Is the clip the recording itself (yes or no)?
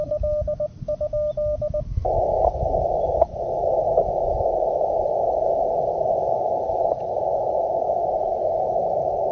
yes